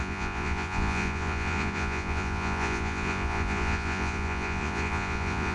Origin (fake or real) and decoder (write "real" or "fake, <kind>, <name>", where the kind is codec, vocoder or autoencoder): fake, vocoder, Vocos